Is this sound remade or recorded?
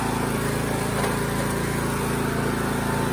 recorded